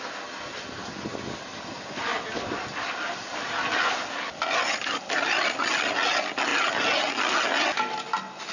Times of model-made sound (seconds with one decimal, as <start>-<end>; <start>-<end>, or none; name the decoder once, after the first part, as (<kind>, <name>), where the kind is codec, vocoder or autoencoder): none